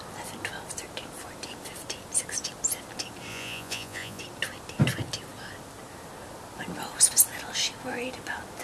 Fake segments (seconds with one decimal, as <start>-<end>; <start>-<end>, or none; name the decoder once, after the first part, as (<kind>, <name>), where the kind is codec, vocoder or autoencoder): 3.3-4.2 (vocoder, Vocos)